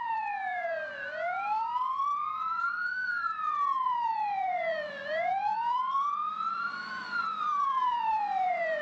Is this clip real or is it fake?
fake